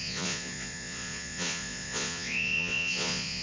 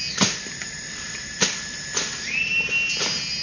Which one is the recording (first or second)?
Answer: second